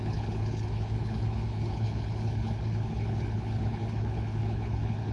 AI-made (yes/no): yes